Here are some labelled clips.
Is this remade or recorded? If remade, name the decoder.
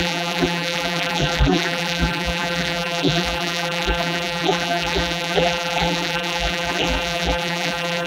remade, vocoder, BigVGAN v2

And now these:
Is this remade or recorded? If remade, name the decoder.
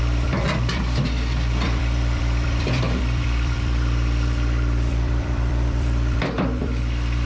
remade, vocoder, BigVGAN v2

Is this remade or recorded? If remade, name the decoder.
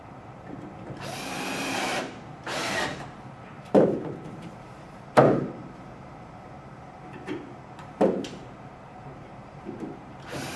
remade, vocoder, BigVGAN v2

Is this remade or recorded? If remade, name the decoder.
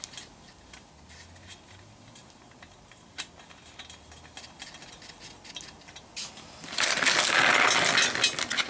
recorded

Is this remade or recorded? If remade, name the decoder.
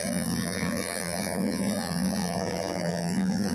remade, vocoder, BigVGAN v2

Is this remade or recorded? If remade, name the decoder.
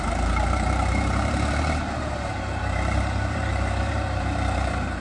remade, vocoder, BigVGAN v2